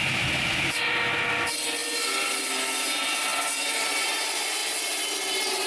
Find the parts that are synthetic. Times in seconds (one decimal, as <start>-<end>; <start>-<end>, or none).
none